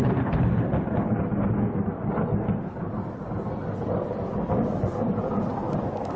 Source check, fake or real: real